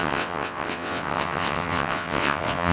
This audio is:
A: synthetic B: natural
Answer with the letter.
A